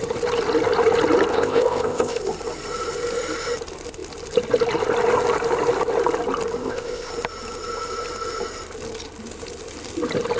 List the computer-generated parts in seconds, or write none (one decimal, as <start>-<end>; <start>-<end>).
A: 1.3-2.2; 6.6-7.1